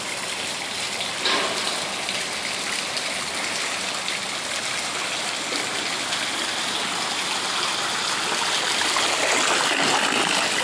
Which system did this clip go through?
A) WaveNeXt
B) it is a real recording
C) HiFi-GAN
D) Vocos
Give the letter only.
B